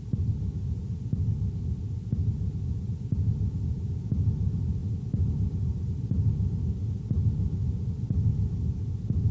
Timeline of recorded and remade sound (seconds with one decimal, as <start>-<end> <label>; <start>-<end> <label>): 0.0-9.3 recorded